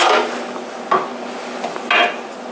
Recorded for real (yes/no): yes